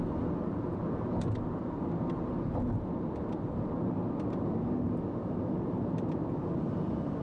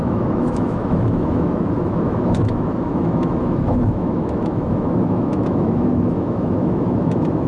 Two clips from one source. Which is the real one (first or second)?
first